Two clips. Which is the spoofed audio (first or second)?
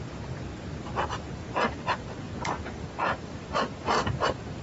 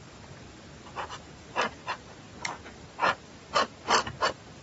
first